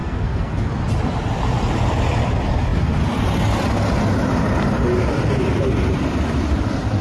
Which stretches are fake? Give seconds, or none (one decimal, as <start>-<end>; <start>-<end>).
0.0-0.7